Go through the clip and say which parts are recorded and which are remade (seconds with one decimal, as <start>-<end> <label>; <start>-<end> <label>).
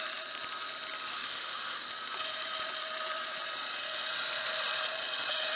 0.0-1.1 recorded; 1.1-1.9 remade; 1.9-5.6 recorded